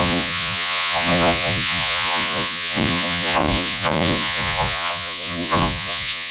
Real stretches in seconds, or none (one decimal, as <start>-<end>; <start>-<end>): none